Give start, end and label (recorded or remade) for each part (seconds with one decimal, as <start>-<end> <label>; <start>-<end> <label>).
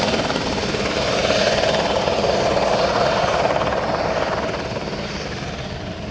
0.0-6.1 recorded